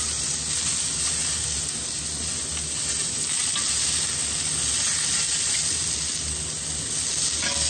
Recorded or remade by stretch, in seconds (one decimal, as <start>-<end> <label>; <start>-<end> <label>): 0.0-7.7 recorded